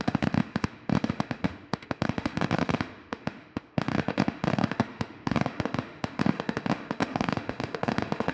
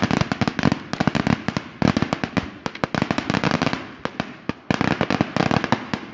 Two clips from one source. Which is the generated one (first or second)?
first